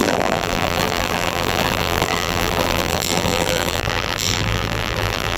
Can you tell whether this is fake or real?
fake